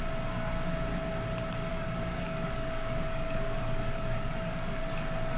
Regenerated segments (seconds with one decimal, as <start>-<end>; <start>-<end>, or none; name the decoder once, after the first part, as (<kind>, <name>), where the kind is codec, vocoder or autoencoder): 1.7-4.8 (codec, DAC)